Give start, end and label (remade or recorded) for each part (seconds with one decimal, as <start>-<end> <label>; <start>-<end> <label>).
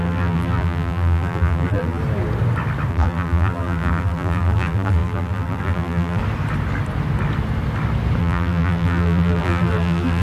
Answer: 0.0-2.0 remade; 2.0-2.9 recorded; 2.9-6.2 remade; 6.2-8.2 recorded; 8.2-10.2 remade